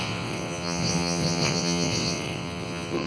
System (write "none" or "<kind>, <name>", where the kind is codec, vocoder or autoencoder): vocoder, WaveNeXt